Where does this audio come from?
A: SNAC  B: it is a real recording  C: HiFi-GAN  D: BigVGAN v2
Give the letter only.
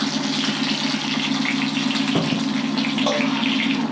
B